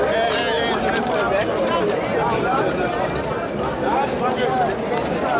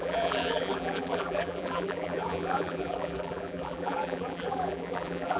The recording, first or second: first